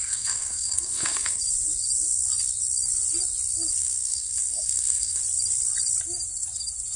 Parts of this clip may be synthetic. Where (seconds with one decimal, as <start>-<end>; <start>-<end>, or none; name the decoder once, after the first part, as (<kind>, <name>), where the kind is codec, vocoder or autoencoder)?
0.0-1.4 (codec, SNAC); 3.8-5.2